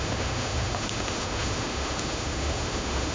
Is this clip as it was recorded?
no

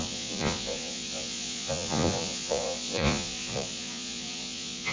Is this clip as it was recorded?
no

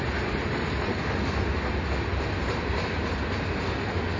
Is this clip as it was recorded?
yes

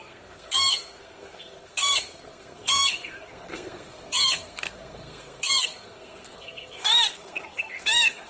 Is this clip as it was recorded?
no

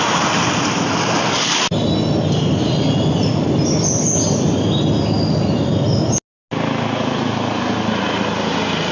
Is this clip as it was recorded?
yes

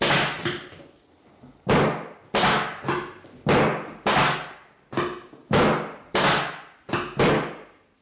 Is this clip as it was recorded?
yes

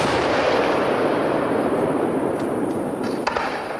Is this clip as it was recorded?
no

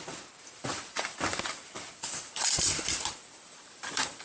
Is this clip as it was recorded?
no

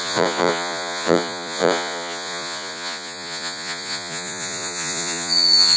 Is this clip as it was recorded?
no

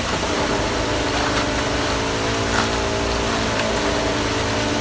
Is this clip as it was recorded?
yes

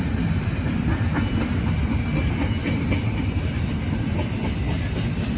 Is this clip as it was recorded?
yes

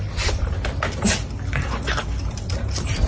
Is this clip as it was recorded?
yes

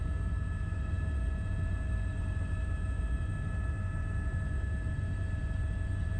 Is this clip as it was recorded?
no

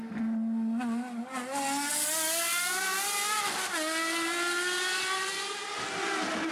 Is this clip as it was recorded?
yes